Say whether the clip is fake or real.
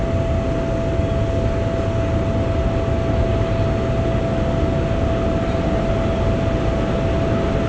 real